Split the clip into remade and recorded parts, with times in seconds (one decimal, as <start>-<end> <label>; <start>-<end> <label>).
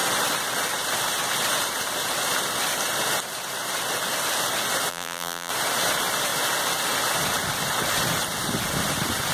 0.0-4.9 recorded; 4.9-5.5 remade; 5.5-9.3 recorded